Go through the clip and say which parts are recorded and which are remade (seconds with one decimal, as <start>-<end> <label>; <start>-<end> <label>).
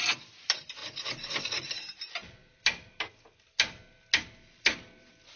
0.0-5.4 recorded